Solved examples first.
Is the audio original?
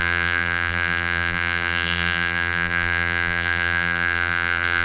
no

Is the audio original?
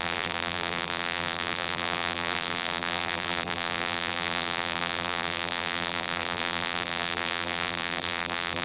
no